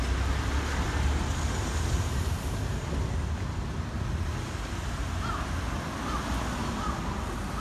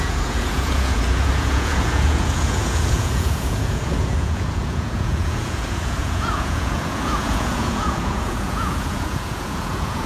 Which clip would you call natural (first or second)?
first